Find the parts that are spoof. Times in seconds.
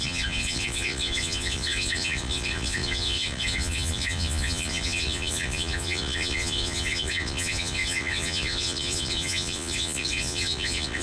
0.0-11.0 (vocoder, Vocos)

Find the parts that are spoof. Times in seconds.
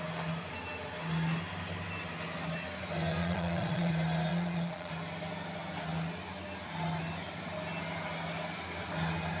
3.2-3.9 (vocoder, Vocos); 4.3-4.9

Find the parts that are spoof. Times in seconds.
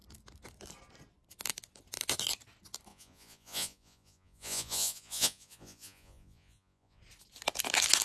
2.9-7.0 (vocoder, Vocos)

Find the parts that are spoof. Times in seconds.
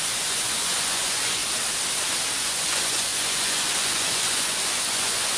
0.0-1.4 (vocoder, Vocos); 2.4-5.4